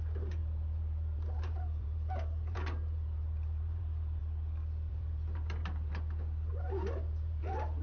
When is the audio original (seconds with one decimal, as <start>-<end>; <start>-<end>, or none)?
4.2-4.9; 5.9-6.5

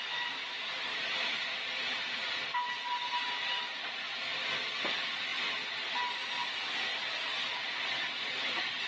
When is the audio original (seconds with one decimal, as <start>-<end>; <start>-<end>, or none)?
0.0-7.8

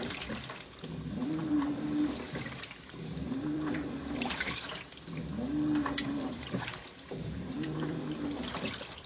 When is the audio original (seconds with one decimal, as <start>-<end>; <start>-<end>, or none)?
4.7-6.0

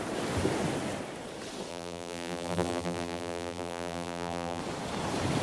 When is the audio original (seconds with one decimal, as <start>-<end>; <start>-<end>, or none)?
0.0-1.7; 4.6-5.4

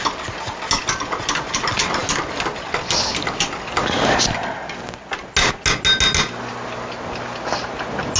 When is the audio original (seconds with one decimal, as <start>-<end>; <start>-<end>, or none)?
0.0-8.2